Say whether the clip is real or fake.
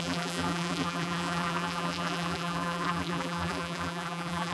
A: fake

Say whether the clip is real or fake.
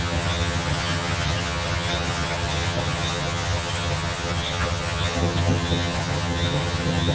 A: fake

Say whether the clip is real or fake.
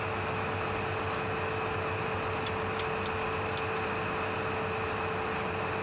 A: real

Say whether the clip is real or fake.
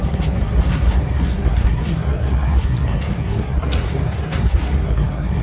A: fake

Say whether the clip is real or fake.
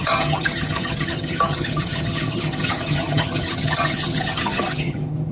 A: fake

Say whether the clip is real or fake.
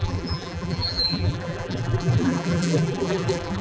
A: fake